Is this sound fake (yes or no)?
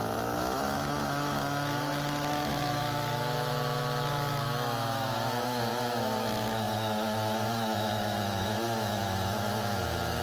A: yes